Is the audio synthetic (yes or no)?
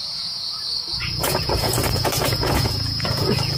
yes